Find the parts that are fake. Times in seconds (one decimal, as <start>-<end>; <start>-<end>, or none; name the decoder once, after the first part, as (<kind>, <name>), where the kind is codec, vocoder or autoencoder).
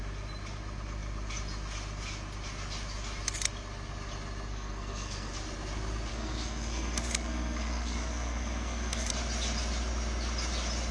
4.5-5.3 (codec, SNAC); 6.1-9.1